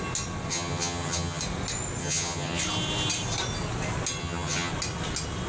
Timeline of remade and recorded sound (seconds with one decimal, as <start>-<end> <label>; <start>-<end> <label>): 0.0-0.5 recorded; 0.5-1.4 remade; 1.4-2.0 recorded; 2.0-2.6 remade; 2.6-4.2 recorded; 4.2-4.7 remade; 4.7-5.5 recorded